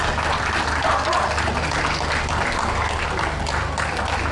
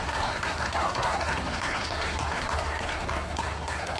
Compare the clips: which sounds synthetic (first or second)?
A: second